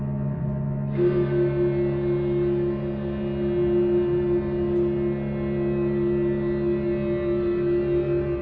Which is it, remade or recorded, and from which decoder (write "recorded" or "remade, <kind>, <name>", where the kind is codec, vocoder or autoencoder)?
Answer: recorded